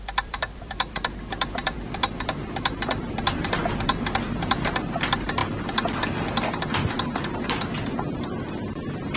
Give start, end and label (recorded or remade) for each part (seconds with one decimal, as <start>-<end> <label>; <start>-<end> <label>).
0.0-9.2 remade